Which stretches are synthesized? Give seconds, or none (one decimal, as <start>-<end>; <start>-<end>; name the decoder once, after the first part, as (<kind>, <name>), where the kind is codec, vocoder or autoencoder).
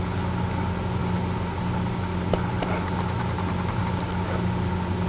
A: none